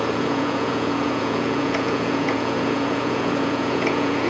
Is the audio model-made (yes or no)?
yes